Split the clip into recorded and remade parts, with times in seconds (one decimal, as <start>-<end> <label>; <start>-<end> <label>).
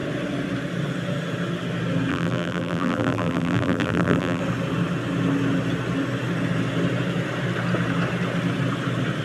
0.0-2.1 recorded; 2.1-4.4 remade; 4.4-9.2 recorded